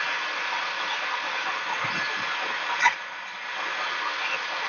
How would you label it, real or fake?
real